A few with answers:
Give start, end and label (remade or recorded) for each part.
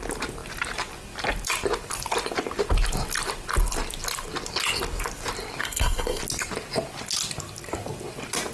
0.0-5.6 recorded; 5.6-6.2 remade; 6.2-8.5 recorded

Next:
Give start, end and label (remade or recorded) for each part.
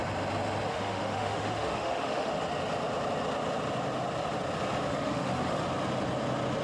0.0-0.7 recorded; 0.7-2.3 remade; 2.3-4.9 recorded; 4.9-5.6 remade; 5.6-6.6 recorded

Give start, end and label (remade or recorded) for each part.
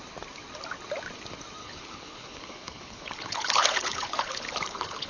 0.0-1.6 recorded; 1.6-5.1 remade